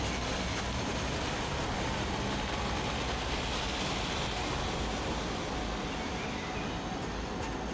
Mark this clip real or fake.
real